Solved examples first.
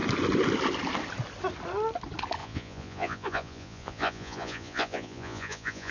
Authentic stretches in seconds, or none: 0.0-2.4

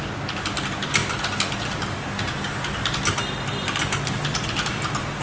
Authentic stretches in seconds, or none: 0.0-5.2

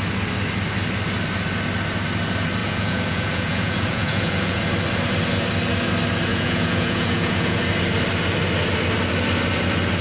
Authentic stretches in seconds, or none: 0.0-2.6; 4.6-6.3; 7.6-10.0

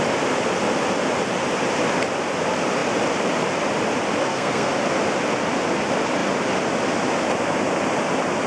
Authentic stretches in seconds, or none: 0.0-4.2; 4.7-8.5

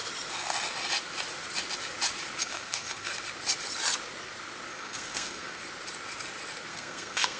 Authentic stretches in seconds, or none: 0.0-2.4; 3.1-4.7; 5.6-6.7

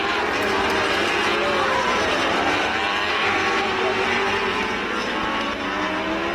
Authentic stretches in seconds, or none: 0.0-3.1; 3.6-6.3

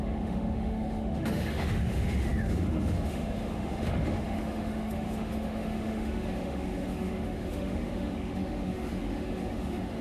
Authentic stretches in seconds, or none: none

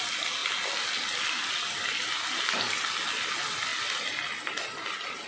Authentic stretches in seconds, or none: 0.0-5.3